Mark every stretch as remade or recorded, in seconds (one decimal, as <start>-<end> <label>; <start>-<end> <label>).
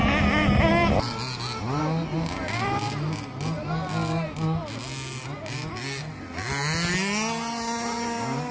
0.0-8.5 recorded